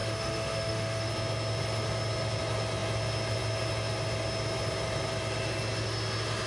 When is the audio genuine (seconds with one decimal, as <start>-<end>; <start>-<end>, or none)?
1.1-6.5